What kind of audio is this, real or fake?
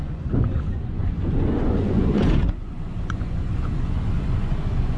fake